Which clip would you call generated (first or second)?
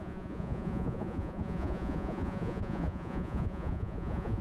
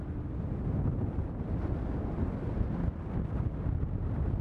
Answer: first